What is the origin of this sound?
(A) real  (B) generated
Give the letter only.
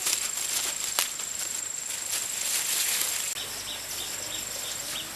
A